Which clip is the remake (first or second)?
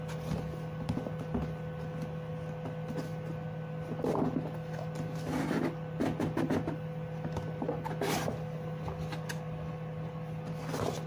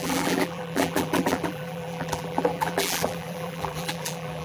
second